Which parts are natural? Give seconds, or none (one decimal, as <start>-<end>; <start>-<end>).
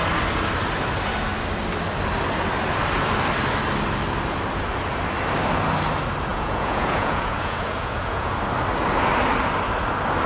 0.0-6.3; 8.3-10.3